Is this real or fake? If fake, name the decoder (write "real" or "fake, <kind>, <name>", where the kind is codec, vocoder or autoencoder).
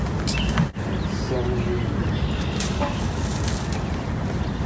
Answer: fake, vocoder, BigVGAN v2